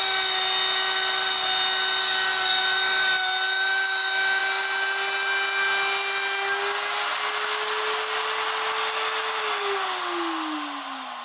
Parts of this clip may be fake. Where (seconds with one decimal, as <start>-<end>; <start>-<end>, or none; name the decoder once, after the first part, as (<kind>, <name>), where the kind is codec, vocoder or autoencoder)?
2.0-2.6 (codec, DAC)